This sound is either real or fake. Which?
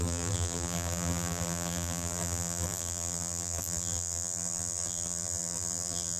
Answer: fake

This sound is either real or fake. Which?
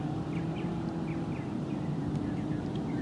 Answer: fake